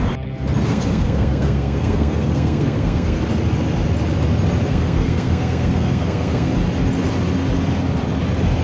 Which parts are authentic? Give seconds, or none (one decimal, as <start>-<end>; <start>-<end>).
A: 0.0-0.7; 3.2-4.7; 6.5-8.6